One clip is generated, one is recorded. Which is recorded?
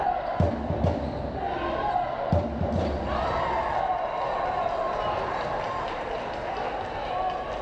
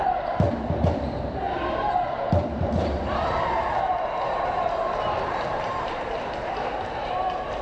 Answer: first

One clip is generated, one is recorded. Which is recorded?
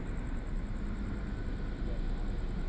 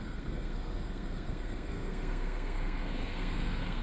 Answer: first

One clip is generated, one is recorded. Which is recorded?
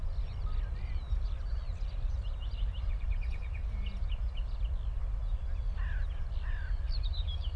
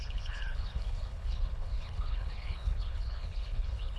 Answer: first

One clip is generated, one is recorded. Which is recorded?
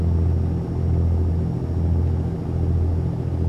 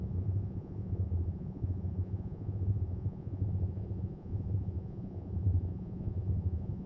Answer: first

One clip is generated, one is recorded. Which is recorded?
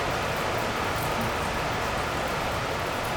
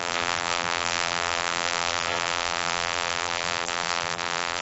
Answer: first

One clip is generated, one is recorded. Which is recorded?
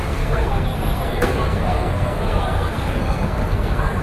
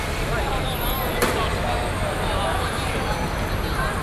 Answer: second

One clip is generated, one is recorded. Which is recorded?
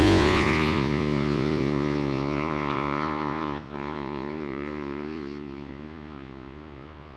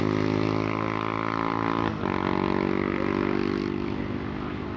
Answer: second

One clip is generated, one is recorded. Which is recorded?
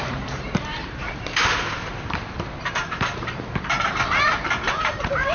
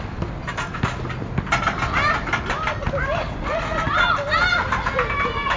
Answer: second